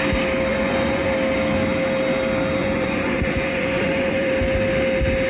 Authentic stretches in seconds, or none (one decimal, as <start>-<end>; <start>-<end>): 0.0-0.5; 1.1-2.6; 4.3-5.3